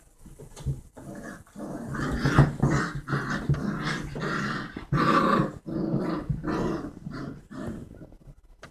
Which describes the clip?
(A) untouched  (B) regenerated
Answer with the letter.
A